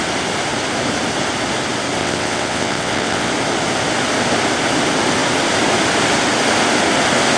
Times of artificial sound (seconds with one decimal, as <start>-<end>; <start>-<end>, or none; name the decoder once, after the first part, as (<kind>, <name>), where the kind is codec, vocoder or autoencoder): 2.0-3.3 (vocoder, WaveNeXt)